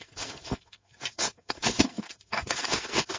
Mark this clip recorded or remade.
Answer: remade